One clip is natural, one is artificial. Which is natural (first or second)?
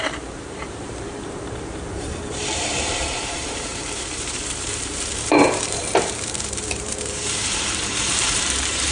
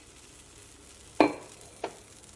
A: second